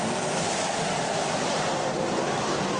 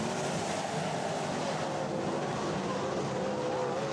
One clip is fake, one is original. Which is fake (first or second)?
first